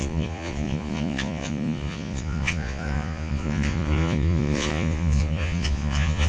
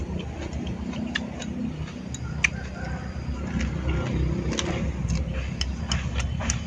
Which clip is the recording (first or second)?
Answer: second